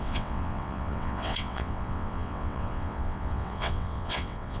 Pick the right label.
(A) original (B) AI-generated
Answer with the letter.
B